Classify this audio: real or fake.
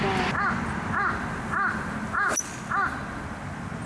real